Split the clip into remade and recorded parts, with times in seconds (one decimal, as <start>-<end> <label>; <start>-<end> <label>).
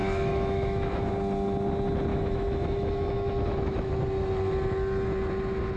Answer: 0.0-1.1 remade; 1.1-2.1 recorded; 2.1-3.9 remade; 3.9-5.8 recorded